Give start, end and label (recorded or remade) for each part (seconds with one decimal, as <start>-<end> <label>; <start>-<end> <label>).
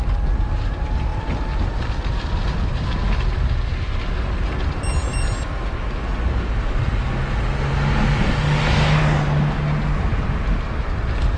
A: 0.0-11.4 recorded